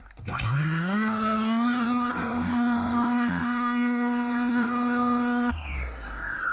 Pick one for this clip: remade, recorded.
remade